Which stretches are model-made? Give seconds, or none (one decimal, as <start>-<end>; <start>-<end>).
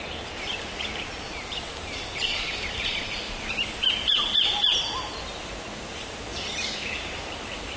0.0-4.6; 6.0-7.8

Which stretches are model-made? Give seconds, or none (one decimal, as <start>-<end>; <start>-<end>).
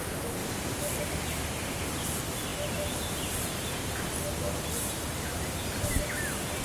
none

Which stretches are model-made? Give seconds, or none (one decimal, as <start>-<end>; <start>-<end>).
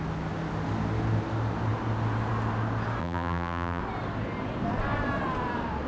3.0-3.8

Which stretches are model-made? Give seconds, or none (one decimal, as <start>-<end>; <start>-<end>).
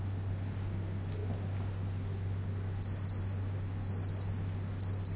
none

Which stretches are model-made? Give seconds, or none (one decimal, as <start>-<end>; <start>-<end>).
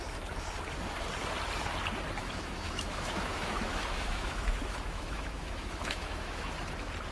2.2-6.5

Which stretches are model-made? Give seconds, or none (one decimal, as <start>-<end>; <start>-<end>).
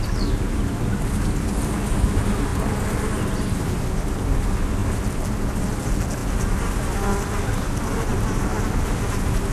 none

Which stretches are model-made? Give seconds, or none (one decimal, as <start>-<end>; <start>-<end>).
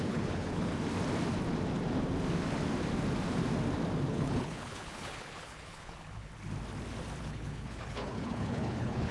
0.0-0.7; 4.1-6.3; 7.2-9.1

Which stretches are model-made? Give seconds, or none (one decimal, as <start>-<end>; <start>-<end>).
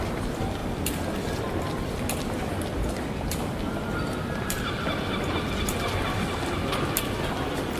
none